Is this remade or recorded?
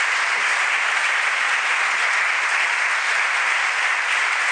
recorded